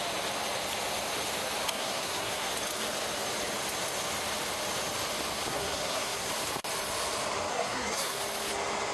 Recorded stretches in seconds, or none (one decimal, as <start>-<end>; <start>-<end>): 0.0-1.6; 2.5-5.5; 6.3-7.5; 8.2-8.9